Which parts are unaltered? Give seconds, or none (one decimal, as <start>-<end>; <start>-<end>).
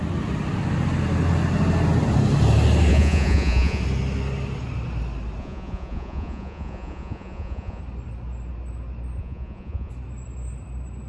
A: 0.0-2.9; 3.8-5.4; 7.8-9.2; 9.9-11.1